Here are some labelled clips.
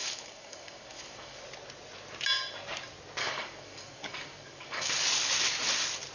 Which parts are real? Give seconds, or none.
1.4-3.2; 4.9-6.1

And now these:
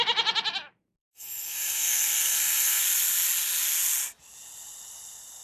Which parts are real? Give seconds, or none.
0.0-1.0; 2.8-5.4

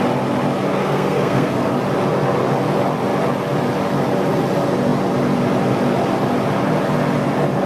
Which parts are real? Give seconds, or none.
0.0-0.7; 1.7-7.7

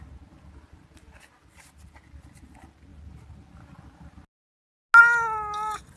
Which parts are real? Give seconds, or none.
0.0-6.0

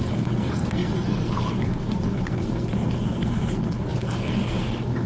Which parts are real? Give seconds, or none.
none

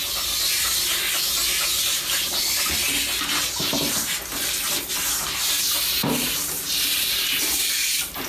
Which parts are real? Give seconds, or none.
0.0-8.3

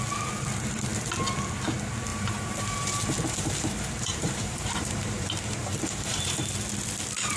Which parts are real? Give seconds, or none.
0.0-2.1; 6.5-7.4

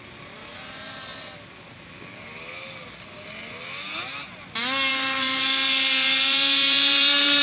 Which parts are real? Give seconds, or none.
1.1-4.9